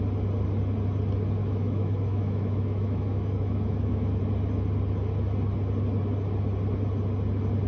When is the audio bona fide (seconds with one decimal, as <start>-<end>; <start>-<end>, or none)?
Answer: 0.0-1.4; 4.2-7.7